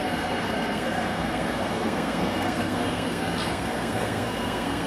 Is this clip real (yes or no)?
no